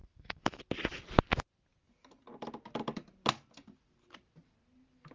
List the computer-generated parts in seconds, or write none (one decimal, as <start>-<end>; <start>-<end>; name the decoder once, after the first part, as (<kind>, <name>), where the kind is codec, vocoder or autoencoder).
0.0-0.6 (autoencoder, DAC-VAE)